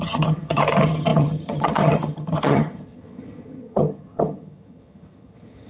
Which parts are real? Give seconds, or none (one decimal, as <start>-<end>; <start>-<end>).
none